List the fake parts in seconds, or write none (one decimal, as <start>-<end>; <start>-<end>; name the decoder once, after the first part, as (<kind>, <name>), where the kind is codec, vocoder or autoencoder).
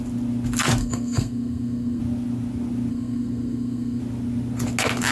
0.8-2.0 (codec, SNAC); 2.9-4.0